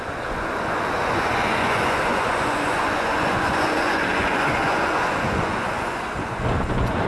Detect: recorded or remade remade